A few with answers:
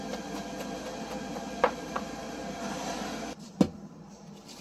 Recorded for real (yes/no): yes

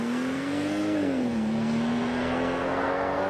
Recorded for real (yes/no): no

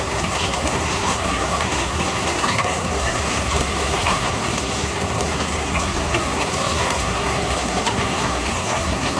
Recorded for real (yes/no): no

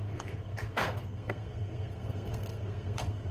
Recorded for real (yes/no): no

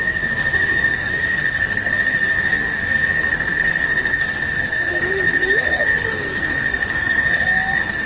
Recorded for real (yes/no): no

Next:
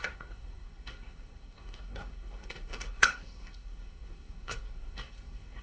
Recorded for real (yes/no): no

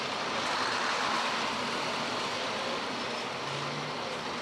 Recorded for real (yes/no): yes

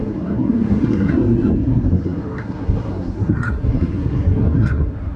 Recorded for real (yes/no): no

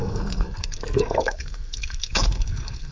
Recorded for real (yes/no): no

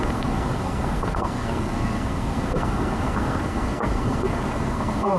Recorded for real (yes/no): no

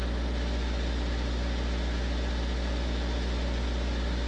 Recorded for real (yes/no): yes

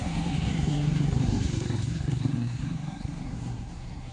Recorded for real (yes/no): no